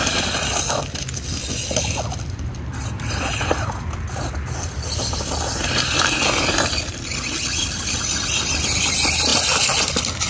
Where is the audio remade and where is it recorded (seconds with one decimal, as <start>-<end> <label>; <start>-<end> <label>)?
0.0-10.3 recorded